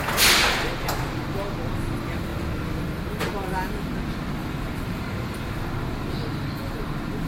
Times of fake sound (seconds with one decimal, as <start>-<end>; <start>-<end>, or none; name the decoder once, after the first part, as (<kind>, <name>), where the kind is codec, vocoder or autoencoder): 4.4-5.6 (vocoder, BigVGAN v2)

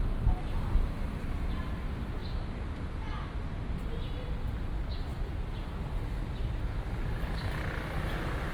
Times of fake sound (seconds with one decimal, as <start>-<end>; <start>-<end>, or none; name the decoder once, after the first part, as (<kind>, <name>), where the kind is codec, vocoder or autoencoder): none

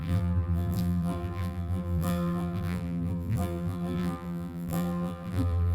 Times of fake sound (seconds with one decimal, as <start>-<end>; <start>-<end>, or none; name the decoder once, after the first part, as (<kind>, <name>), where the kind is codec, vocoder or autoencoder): 0.0-5.7 (vocoder, BigVGAN v2)

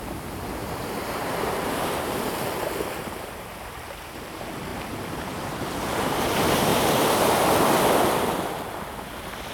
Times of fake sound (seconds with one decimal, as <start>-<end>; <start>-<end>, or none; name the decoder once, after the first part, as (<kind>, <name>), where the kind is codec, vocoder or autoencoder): 0.6-3.7 (vocoder, BigVGAN v2); 4.7-6.2; 6.7-7.8

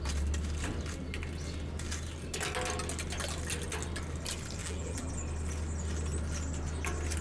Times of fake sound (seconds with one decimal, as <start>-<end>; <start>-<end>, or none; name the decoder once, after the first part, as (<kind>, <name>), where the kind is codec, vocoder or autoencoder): 4.6-5.1 (vocoder, BigVGAN v2)